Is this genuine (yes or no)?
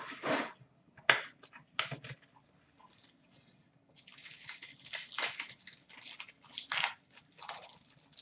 yes